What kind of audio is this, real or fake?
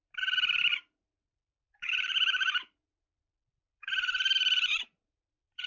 fake